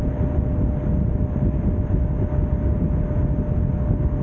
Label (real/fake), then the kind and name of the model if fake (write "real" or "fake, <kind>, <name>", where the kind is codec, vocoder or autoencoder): real